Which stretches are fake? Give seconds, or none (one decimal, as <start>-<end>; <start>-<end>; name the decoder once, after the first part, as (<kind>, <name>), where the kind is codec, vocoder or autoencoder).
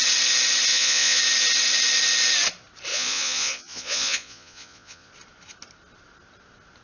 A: 0.7-1.2 (vocoder, Vocos); 2.9-5.1